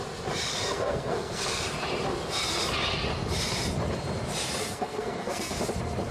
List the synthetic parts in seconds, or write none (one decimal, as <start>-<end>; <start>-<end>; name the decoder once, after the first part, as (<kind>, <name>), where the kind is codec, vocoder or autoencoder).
0.5-1.6 (codec, SNAC); 4.6-5.6

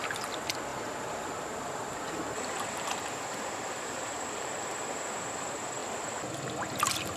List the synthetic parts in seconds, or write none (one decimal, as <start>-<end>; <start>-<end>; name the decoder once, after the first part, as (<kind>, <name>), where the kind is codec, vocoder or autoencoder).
0.7-4.5 (vocoder, BigVGAN v2)